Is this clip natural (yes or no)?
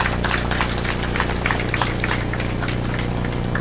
yes